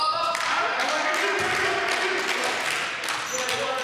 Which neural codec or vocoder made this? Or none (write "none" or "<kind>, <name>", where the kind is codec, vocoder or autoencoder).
none